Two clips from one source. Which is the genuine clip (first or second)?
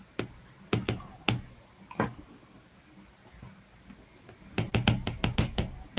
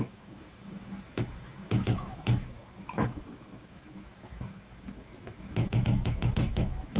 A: first